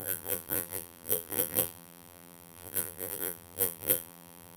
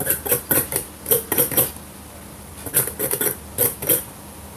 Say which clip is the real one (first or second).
second